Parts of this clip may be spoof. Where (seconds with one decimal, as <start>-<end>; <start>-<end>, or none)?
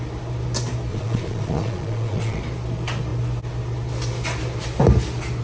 0.9-2.4